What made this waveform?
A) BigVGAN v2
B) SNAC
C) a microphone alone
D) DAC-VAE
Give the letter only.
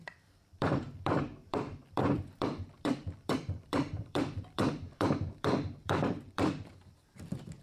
A